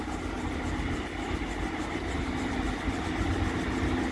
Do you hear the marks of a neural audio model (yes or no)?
no